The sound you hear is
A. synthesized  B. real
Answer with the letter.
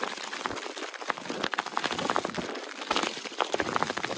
B